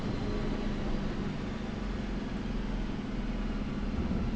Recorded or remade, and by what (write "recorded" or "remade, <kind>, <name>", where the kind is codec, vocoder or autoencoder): recorded